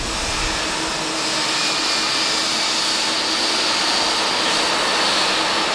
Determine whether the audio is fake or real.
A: real